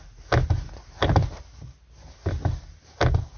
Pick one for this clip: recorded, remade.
recorded